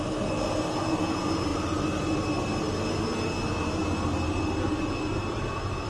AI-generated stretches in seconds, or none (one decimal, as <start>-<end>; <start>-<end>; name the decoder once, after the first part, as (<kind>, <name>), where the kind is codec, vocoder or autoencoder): none